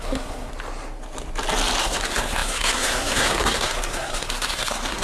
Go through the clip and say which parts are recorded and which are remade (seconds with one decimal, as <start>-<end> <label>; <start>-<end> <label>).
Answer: 0.0-0.5 remade; 0.5-1.8 recorded; 1.8-5.0 remade